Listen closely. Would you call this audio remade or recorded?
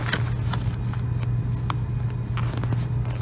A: recorded